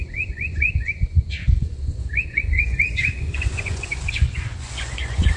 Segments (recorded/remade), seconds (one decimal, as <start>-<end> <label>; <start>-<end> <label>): 0.0-5.4 remade